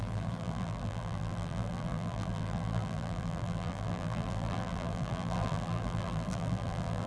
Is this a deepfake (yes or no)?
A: yes